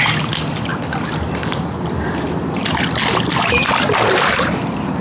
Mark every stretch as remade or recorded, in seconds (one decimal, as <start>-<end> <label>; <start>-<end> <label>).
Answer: 0.0-5.0 recorded